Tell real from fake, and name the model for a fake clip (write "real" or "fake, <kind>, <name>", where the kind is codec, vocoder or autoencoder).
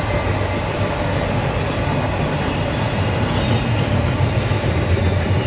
real